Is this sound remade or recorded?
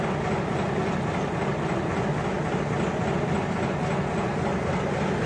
recorded